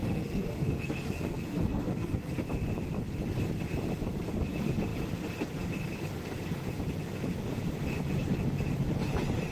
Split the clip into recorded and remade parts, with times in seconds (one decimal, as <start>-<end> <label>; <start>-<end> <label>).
0.0-2.3 remade; 2.3-9.5 recorded